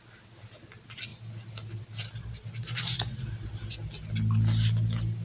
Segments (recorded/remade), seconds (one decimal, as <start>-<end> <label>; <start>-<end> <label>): 0.0-5.2 recorded